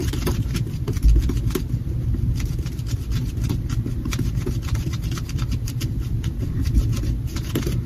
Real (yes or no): yes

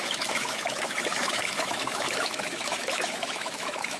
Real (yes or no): no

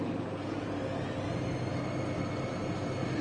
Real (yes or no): yes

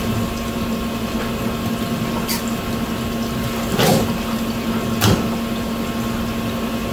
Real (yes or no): yes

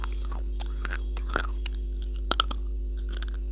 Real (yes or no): yes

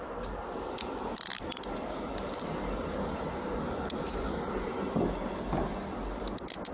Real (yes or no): yes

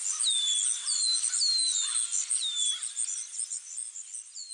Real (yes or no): yes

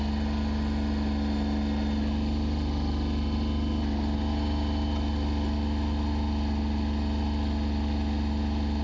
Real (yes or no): yes